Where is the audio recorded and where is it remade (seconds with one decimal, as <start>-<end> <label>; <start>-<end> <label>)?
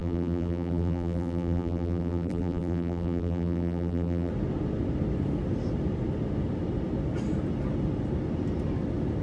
0.0-4.3 remade; 4.3-9.2 recorded